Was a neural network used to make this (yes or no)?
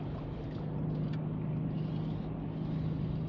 no